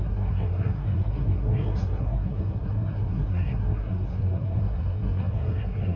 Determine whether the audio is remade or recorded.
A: remade